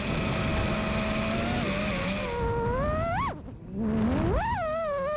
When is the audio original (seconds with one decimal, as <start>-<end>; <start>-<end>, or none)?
0.0-5.2